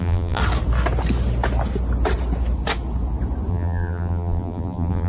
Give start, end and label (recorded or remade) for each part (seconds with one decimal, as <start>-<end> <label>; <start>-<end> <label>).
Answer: 0.0-0.4 remade; 0.4-3.5 recorded; 3.5-5.1 remade